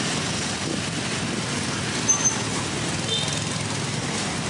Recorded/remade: recorded